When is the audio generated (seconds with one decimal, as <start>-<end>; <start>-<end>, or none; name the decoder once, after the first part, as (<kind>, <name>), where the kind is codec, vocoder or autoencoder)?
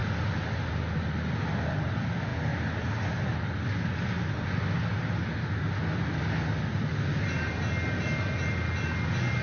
none